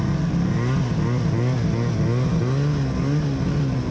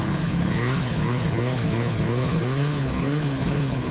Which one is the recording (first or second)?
first